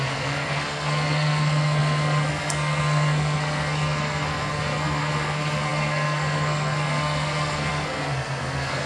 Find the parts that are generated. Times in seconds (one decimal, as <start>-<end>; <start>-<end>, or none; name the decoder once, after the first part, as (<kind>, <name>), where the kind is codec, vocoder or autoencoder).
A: 0.0-8.9 (codec, SNAC)